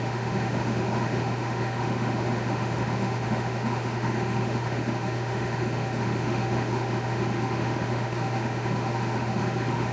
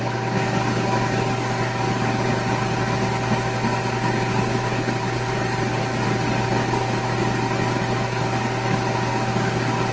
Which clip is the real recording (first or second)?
second